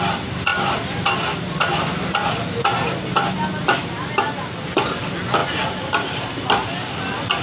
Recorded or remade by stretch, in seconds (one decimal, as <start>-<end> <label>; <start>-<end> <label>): 0.0-0.5 recorded; 0.5-2.6 remade; 2.6-5.4 recorded; 5.4-7.0 remade; 7.0-7.4 recorded